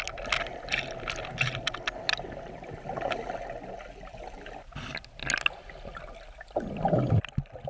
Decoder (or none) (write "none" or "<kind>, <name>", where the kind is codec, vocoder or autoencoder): none